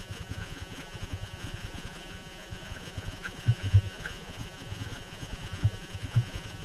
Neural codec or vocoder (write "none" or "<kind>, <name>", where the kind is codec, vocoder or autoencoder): vocoder, Vocos